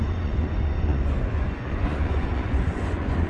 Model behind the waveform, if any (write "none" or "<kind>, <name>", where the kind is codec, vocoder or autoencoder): vocoder, Vocos